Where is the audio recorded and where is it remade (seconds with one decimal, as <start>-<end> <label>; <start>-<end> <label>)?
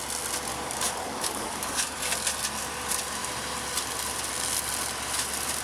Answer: 0.0-0.5 recorded; 0.5-2.1 remade; 2.1-5.6 recorded